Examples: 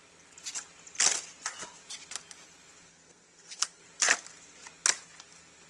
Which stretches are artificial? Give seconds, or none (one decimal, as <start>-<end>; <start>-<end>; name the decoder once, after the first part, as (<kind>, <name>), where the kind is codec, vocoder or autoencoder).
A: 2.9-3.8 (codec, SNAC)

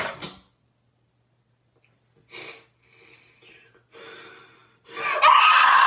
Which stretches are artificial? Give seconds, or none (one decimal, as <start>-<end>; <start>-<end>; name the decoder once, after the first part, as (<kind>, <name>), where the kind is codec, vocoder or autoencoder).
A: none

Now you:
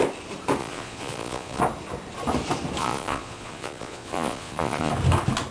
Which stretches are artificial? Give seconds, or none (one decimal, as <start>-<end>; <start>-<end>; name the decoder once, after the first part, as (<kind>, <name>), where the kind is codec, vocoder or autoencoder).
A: 0.6-1.6 (vocoder, Vocos); 2.8-4.9